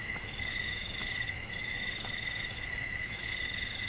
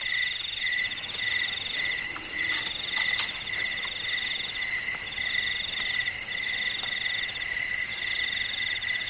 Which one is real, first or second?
second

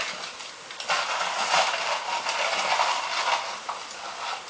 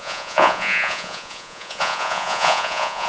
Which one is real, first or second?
first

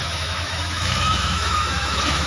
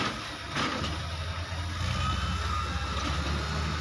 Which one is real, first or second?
second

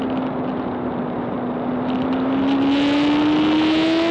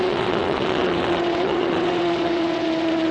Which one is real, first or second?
first